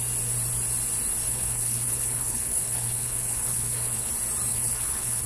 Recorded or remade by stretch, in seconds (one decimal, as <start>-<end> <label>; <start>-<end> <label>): 0.0-1.2 recorded; 1.2-4.1 remade; 4.1-4.5 recorded; 4.5-5.3 remade